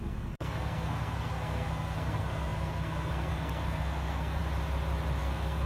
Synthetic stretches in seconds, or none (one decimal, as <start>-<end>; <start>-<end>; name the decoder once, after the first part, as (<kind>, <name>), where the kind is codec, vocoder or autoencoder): 0.0-4.4 (codec, SNAC); 5.2-5.7